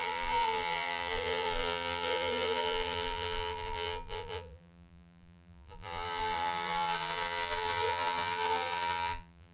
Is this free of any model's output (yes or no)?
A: no